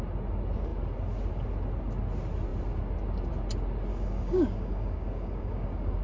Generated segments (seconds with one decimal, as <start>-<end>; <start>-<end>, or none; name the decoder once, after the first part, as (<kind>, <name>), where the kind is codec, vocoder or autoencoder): 3.9-6.0 (codec, DAC)